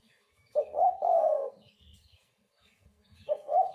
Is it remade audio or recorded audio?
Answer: remade